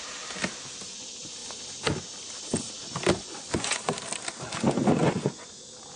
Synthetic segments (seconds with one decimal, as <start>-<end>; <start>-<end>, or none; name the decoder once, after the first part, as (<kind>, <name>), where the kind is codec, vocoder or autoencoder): 3.2-3.9 (vocoder, Vocos); 5.0-5.6